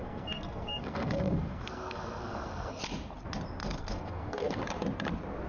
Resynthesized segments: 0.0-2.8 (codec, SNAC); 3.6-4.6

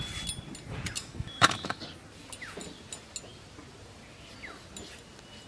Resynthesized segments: 1.0-1.8 (autoencoder, DAC-VAE)

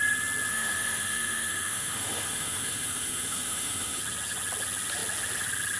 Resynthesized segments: 0.5-4.0 (autoencoder, DAC-VAE)

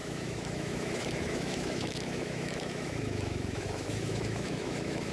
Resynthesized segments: 0.0-5.1 (autoencoder, DAC-VAE)